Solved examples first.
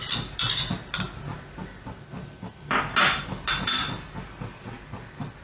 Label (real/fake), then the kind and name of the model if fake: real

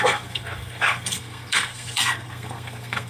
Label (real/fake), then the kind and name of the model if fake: fake, codec, SNAC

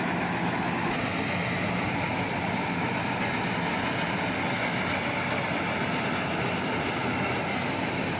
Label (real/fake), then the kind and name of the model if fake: real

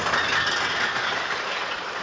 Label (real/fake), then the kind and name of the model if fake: real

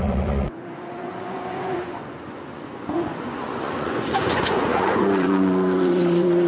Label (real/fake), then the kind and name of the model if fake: fake, vocoder, Vocos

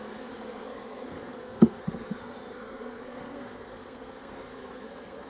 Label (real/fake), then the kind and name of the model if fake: fake, codec, SNAC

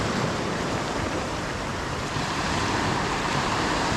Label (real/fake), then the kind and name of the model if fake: fake, vocoder, BigVGAN v2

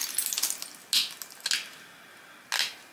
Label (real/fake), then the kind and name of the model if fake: real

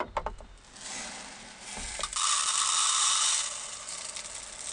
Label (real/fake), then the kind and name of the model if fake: real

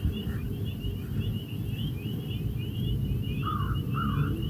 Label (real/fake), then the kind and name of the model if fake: real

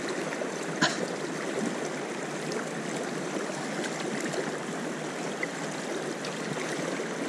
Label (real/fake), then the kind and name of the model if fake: real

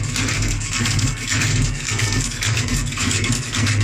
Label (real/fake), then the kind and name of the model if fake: fake, codec, SNAC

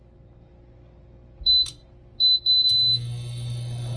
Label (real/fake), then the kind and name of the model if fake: real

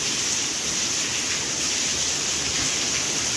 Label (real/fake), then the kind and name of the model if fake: real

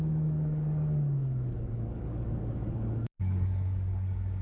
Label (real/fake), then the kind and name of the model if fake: fake, codec, DAC